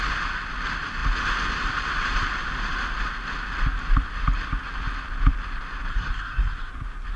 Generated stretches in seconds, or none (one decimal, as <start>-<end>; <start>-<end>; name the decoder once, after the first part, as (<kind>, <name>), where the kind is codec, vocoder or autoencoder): 5.9-6.7 (codec, SNAC)